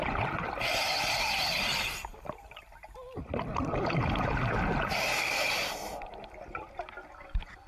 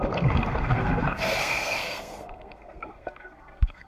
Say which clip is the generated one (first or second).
second